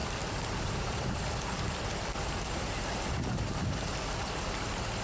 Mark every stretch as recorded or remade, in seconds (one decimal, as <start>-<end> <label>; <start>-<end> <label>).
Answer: 0.0-2.5 remade; 2.5-5.0 recorded